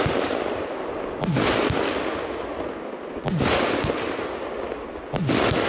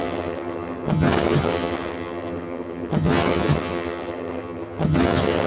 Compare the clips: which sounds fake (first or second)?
second